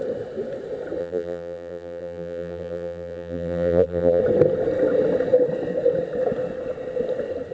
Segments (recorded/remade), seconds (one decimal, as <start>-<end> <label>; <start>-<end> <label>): 0.0-1.0 recorded; 1.0-4.2 remade; 4.2-7.5 recorded